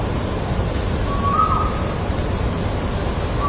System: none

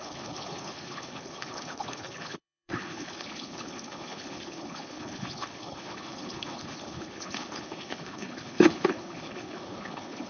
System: codec, HILCodec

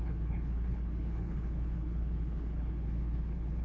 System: codec, HILCodec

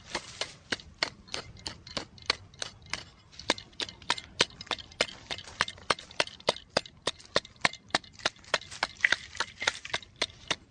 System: none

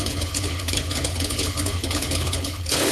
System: codec, HILCodec